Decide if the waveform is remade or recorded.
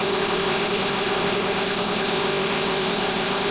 remade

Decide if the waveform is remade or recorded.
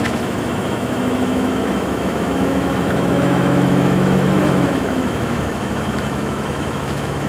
remade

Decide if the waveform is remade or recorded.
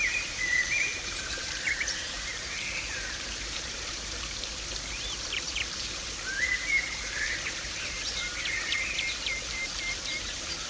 remade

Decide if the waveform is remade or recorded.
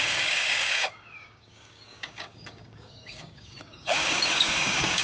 remade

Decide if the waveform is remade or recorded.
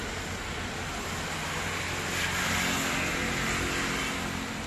recorded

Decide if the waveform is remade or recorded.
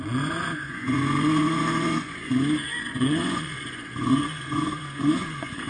remade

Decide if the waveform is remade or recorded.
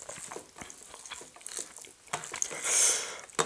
recorded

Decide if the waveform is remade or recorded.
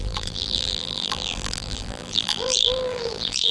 remade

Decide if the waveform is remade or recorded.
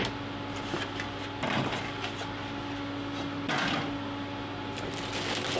recorded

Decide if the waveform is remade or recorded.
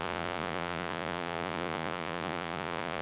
remade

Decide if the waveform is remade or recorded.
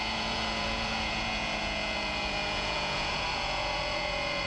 remade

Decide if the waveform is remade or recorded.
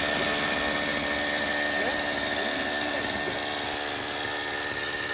recorded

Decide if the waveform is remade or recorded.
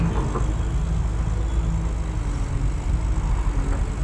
recorded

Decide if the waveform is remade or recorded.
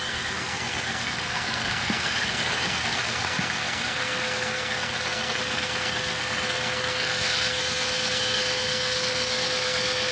remade